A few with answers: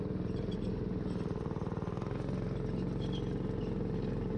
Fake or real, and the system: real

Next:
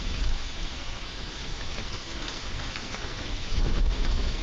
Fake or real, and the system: fake, codec, SNAC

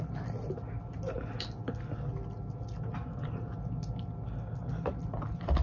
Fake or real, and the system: real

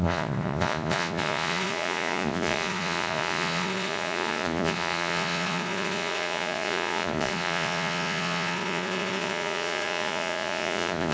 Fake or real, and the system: fake, vocoder, Vocos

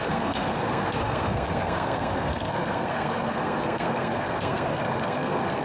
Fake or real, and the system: fake, codec, SNAC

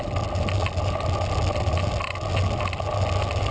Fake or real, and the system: real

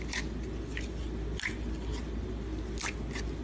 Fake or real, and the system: real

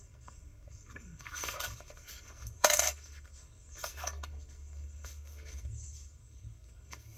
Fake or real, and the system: fake, codec, SNAC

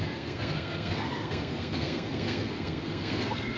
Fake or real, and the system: fake, codec, SNAC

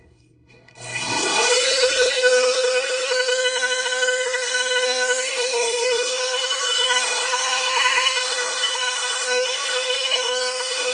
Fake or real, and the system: fake, codec, SNAC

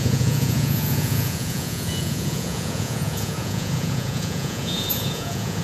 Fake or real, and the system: fake, vocoder, Vocos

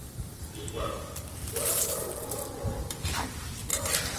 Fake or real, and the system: real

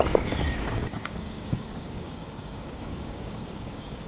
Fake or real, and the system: fake, codec, DAC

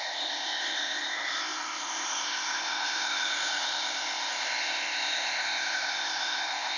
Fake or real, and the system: fake, codec, ZipCodec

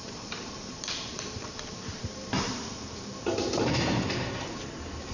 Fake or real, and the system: fake, vocoder, BigVGAN v2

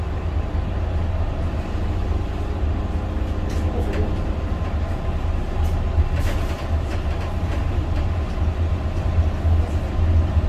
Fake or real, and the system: real